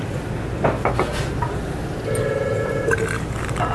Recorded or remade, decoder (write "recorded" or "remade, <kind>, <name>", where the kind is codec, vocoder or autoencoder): recorded